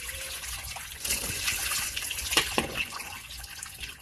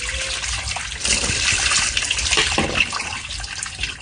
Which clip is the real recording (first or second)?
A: second